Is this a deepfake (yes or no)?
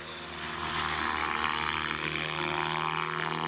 no